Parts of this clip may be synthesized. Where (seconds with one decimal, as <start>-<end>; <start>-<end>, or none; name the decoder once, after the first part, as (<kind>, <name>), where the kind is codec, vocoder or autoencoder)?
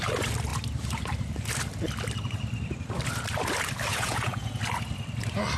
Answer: 3.9-4.6 (vocoder, Vocos)